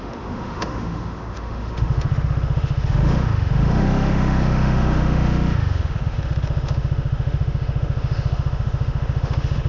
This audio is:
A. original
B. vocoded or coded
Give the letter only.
B